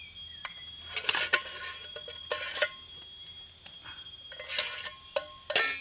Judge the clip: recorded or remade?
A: recorded